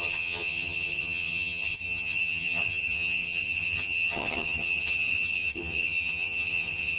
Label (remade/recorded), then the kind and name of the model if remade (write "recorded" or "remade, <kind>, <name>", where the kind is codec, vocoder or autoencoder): remade, vocoder, HiFi-GAN